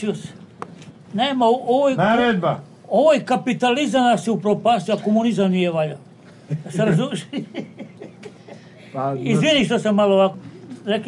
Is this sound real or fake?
real